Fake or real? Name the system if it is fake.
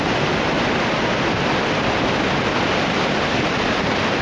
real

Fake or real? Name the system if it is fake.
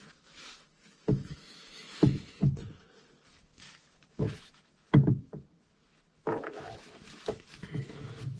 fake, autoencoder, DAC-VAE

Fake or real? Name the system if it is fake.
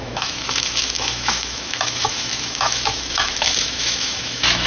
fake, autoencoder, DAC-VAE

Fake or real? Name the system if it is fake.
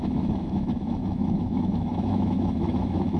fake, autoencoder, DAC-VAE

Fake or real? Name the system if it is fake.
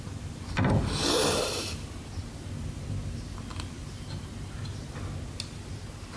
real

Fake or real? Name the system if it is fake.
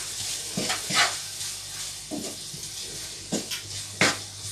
real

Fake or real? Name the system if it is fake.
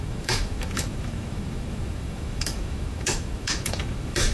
fake, autoencoder, DAC-VAE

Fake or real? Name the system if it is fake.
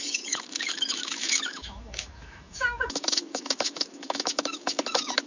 fake, autoencoder, DAC-VAE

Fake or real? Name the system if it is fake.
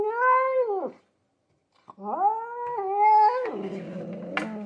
real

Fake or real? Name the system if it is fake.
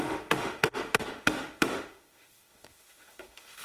fake, autoencoder, DAC-VAE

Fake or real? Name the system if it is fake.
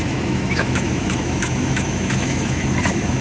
fake, autoencoder, DAC-VAE